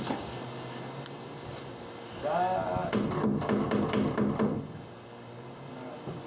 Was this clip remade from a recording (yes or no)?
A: no